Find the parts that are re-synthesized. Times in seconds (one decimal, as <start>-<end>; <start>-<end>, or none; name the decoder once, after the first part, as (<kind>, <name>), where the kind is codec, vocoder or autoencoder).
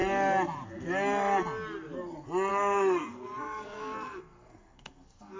2.5-5.4 (codec, SNAC)